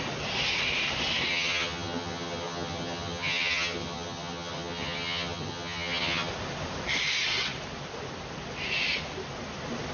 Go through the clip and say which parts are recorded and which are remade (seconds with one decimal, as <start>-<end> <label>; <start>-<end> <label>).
0.0-1.3 recorded; 1.3-6.3 remade; 6.3-9.9 recorded